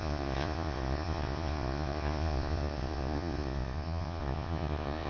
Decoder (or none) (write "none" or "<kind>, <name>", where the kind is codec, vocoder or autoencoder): vocoder, Vocos